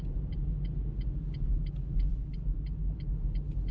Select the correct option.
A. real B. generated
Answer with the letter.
A